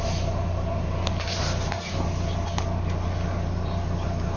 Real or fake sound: real